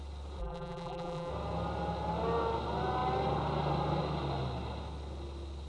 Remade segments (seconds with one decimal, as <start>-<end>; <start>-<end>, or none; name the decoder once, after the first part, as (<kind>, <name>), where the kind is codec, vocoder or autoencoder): 0.4-1.3 (vocoder, BigVGAN v2)